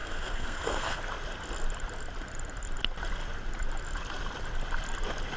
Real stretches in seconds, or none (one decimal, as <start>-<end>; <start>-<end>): 1.0-5.4

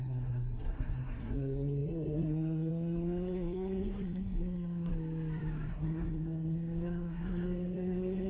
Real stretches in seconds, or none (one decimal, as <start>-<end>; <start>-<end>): 4.9-5.7

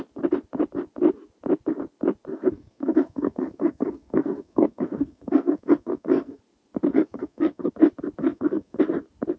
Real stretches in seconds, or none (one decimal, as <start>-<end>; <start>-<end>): 0.0-2.3; 6.4-6.9; 7.7-8.2; 8.8-9.4